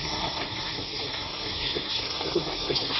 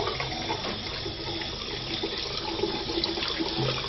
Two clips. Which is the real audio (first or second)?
second